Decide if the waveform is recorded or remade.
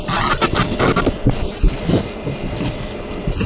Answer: recorded